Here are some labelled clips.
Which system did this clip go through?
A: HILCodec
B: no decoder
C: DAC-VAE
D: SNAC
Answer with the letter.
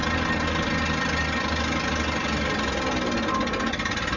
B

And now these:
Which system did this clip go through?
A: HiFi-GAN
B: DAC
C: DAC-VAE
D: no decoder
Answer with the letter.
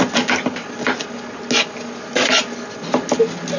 D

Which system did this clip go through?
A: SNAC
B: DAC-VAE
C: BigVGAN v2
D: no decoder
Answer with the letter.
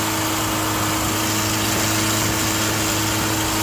D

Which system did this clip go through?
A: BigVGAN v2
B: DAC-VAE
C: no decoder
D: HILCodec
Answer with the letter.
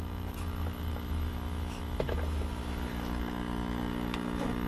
B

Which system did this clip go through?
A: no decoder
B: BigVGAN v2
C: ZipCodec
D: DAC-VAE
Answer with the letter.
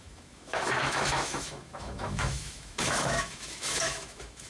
D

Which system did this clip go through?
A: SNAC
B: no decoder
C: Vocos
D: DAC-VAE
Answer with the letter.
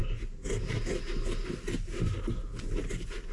B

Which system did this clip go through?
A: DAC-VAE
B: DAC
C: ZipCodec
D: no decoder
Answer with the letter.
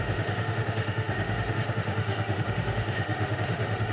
A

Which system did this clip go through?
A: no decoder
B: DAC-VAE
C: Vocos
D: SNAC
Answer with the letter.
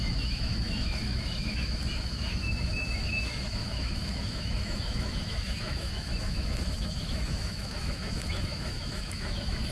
B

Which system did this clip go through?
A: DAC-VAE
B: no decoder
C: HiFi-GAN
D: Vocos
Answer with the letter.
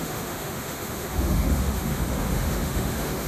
A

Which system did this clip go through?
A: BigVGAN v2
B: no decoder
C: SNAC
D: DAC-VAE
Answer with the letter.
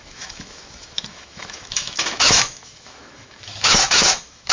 D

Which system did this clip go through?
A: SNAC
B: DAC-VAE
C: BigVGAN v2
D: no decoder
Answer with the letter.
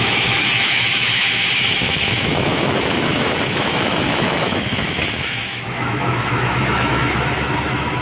B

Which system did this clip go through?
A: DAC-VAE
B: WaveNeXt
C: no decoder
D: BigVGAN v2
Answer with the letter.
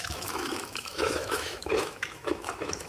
A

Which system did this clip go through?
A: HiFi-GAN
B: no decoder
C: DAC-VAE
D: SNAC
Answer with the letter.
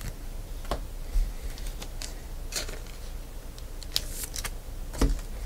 B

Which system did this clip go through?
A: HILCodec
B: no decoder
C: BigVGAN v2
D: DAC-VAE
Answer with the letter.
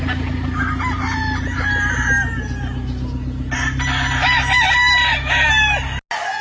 B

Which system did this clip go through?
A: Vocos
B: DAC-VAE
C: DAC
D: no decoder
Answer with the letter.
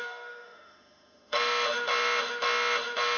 B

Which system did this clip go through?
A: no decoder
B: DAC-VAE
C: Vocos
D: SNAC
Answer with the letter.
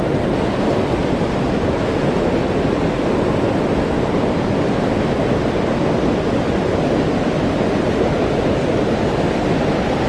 A